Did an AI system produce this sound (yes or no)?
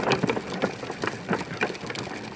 no